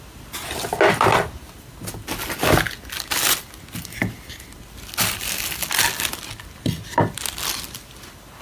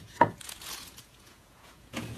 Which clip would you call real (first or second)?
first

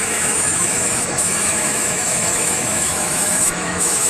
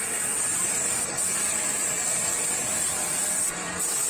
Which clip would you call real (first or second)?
second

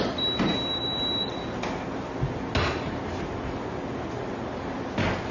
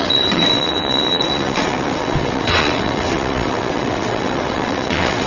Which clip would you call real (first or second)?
first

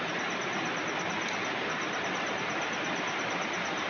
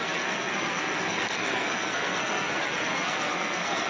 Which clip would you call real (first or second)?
first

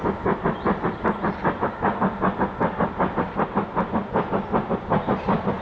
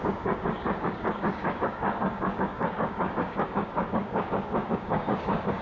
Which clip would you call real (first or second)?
first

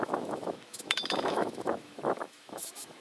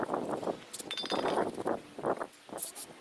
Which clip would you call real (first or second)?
second